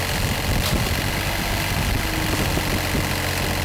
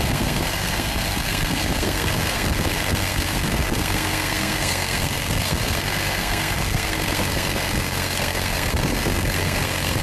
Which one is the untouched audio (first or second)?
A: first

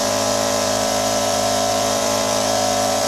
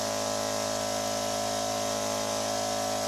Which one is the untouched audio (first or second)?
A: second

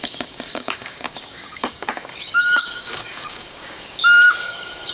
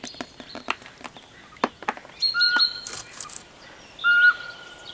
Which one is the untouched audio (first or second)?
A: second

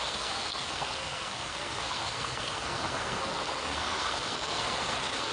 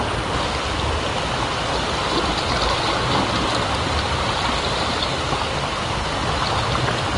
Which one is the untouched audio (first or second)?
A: second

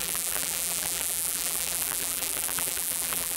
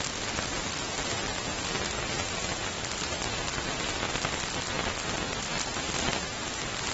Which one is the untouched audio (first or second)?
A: second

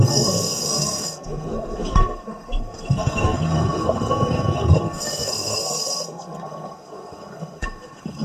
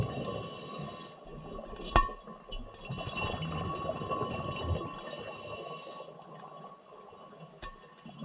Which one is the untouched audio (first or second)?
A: second